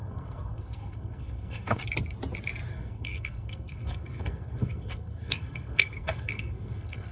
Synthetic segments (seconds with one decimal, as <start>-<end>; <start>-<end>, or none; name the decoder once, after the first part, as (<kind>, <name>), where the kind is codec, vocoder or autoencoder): 0.0-1.8 (codec, SNAC); 2.7-7.1